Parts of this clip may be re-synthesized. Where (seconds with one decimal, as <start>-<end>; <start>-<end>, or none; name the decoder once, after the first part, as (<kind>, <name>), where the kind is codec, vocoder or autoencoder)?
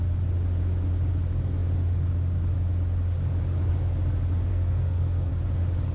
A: 4.5-5.3 (codec, SNAC)